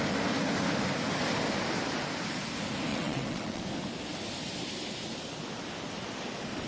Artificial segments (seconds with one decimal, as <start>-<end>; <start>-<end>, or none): 2.9-3.6